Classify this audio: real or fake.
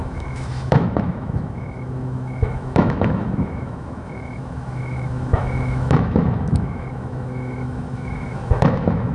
fake